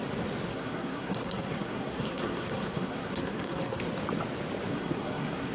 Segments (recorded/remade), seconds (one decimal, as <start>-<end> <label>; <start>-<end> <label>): 0.0-0.5 recorded; 0.5-3.8 remade; 3.8-4.7 recorded; 4.7-5.5 remade

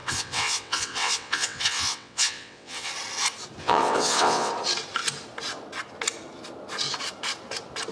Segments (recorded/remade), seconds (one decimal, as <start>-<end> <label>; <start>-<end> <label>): 0.0-2.9 remade; 2.9-3.6 recorded; 3.6-4.5 remade; 4.5-7.9 recorded

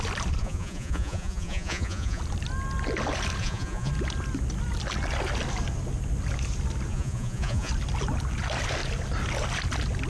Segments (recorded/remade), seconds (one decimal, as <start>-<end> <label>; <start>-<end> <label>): 0.0-0.4 recorded; 0.4-2.2 remade; 2.2-3.4 recorded; 3.4-3.9 remade; 3.9-6.9 recorded; 6.9-7.7 remade; 7.7-10.1 recorded

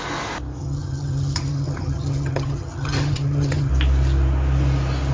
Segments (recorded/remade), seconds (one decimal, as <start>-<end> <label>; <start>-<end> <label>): 0.0-0.6 recorded; 0.6-3.7 remade; 3.7-5.1 recorded

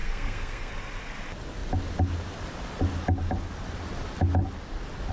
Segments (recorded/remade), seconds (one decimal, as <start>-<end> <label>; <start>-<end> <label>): 0.0-0.7 remade; 0.7-5.1 recorded

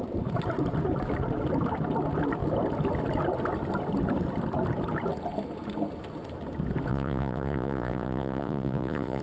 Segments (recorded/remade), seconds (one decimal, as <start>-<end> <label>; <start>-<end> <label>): 0.0-6.9 recorded; 6.9-9.2 remade